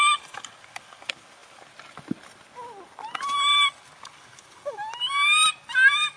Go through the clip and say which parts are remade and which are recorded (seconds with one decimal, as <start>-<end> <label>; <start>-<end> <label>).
0.0-6.2 recorded